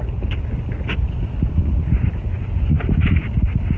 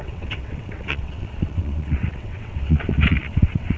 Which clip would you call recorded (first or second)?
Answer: first